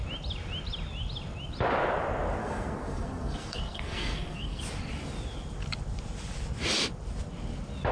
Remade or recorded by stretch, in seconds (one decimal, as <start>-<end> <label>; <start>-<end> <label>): 0.0-2.4 recorded; 2.4-4.6 remade; 4.6-7.9 recorded